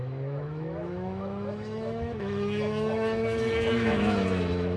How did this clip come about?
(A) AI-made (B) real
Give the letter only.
A